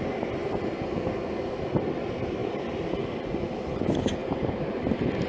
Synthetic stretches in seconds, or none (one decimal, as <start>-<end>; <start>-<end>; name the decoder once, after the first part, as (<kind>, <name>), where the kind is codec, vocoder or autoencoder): 0.4-1.0 (vocoder, BigVGAN v2); 4.2-5.3